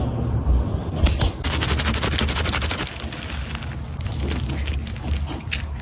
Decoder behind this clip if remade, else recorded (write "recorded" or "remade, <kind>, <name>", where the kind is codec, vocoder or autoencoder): recorded